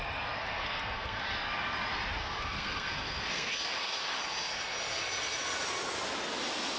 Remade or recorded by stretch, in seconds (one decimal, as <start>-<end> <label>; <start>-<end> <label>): 0.0-0.4 recorded; 0.4-1.2 remade; 1.2-2.2 recorded; 2.2-3.5 remade; 3.5-6.8 recorded